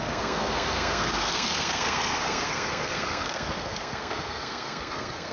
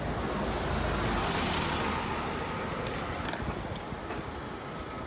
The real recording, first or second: second